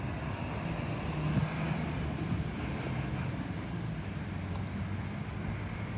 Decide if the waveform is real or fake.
real